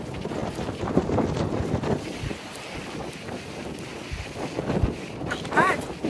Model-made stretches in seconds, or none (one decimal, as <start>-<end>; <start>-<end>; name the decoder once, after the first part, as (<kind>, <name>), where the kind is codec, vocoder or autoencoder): none